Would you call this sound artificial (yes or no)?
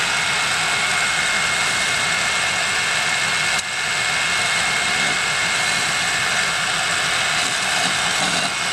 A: no